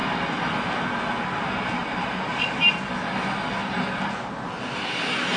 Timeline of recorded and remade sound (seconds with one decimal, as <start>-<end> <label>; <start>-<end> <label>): 0.0-5.4 recorded